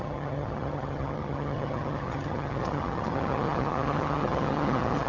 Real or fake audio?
fake